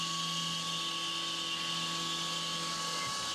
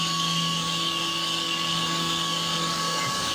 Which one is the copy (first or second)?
second